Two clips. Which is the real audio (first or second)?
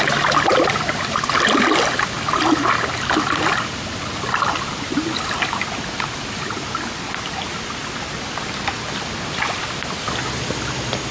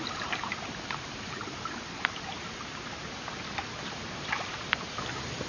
first